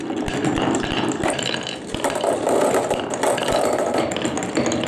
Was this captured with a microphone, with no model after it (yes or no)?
yes